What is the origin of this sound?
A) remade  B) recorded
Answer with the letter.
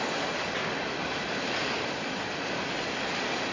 B